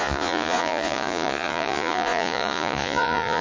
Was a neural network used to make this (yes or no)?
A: yes